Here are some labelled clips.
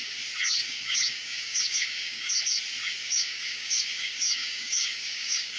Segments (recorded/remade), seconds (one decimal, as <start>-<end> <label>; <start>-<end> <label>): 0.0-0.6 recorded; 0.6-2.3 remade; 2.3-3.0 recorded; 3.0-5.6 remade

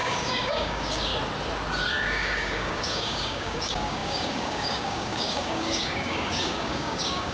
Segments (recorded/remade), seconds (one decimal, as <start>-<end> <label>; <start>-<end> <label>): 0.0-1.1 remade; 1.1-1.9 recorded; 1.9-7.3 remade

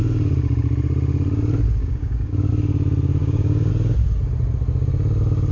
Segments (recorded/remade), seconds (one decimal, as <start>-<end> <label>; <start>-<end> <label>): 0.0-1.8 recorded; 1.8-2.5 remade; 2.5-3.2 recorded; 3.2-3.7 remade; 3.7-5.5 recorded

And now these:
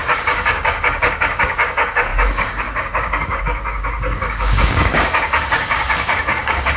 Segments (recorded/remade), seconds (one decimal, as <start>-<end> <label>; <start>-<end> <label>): 0.0-6.8 remade

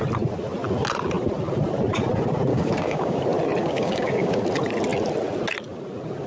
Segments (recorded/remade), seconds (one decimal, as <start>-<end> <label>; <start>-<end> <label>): 0.0-2.5 recorded; 2.5-3.2 remade; 3.2-3.6 recorded; 3.6-4.4 remade; 4.4-6.3 recorded